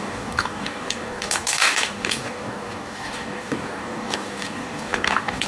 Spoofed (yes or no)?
yes